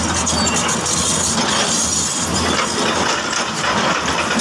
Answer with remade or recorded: recorded